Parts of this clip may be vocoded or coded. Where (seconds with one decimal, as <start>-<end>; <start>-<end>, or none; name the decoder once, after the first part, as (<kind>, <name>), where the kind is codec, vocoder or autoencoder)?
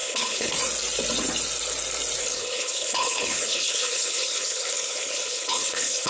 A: 0.0-0.5 (codec, HILCodec); 2.2-6.1